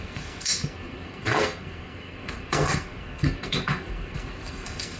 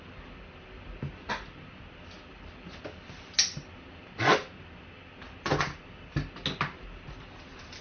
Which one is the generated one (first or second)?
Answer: first